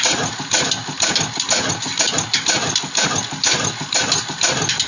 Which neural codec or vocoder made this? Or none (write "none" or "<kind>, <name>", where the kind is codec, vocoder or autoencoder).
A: none